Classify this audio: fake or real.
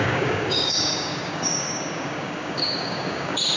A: fake